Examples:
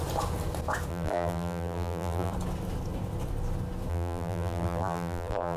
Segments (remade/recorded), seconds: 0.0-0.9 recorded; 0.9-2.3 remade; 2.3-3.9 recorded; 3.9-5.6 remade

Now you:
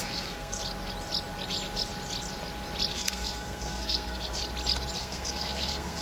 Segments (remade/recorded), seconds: 0.0-0.6 remade; 0.6-2.9 recorded; 2.9-4.4 remade; 4.4-5.0 recorded; 5.0-6.0 remade